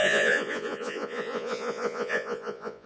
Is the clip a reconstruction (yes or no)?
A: yes